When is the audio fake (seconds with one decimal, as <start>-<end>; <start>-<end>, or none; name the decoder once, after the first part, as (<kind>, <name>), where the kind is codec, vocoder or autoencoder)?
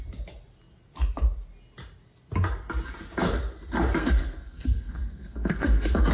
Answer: 4.0-6.1 (codec, SNAC)